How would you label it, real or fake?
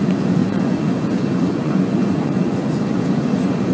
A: fake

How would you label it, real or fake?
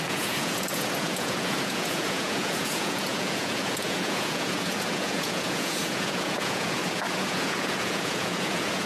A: fake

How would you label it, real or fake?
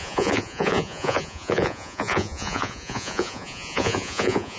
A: fake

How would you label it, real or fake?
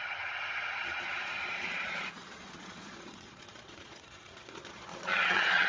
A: fake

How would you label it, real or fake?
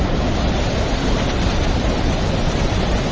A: real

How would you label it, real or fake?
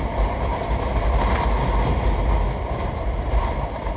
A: real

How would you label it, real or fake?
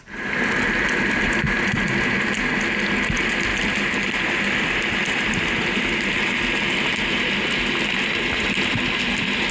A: real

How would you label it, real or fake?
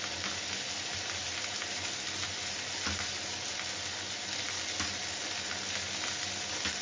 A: real